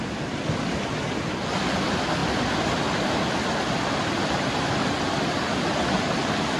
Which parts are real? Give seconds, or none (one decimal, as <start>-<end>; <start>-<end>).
0.0-6.6

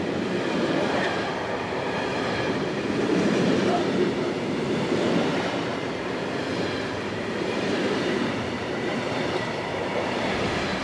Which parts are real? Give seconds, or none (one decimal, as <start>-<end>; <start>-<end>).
5.7-7.1

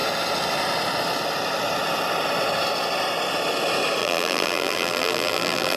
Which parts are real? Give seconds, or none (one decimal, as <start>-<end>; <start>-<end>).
0.0-4.0

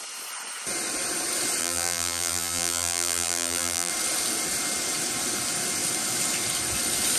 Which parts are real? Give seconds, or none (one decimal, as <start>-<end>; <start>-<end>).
0.0-1.6; 3.9-7.2

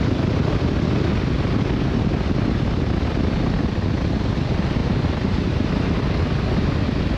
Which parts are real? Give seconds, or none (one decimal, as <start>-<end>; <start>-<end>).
0.0-4.8; 6.0-7.2

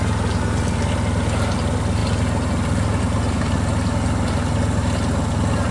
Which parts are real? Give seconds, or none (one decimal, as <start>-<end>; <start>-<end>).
0.0-5.7

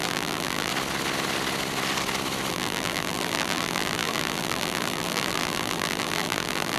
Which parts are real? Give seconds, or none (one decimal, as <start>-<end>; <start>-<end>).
0.7-2.5

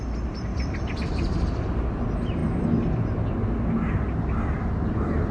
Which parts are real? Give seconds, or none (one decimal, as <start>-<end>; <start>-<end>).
0.0-0.5; 1.4-5.3